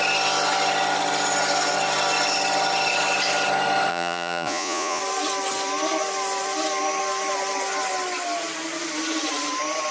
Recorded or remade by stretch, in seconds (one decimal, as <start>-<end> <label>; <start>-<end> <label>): 0.0-3.9 recorded; 3.9-5.0 remade; 5.0-9.9 recorded

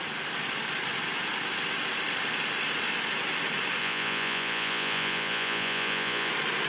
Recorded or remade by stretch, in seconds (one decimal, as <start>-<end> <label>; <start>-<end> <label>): 0.0-3.8 recorded; 3.8-6.3 remade; 6.3-6.7 recorded